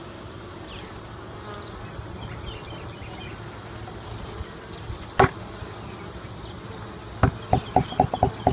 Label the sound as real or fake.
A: real